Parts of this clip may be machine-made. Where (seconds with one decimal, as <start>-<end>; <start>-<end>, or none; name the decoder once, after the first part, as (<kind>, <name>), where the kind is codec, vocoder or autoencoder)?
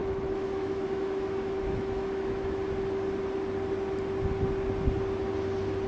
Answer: 0.0-2.6 (autoencoder, DAC-VAE)